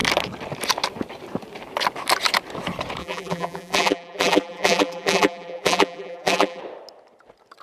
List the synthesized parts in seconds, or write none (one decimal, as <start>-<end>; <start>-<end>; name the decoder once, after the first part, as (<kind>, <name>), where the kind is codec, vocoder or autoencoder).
3.0-6.6 (vocoder, BigVGAN v2)